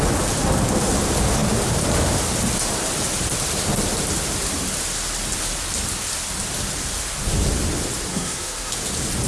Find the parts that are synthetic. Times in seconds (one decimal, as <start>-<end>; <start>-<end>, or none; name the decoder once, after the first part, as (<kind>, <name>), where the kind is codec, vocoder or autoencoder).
8.1-8.7 (codec, SNAC)